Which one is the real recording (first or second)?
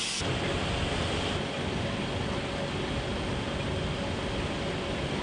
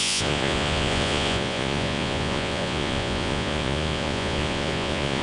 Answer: first